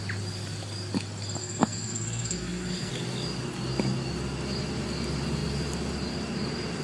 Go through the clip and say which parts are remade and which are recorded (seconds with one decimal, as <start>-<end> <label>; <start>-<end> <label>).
0.0-1.4 recorded; 1.4-2.9 remade; 2.9-6.8 recorded